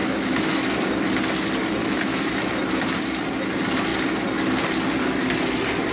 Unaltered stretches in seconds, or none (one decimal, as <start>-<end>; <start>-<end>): 0.6-1.8; 2.3-5.9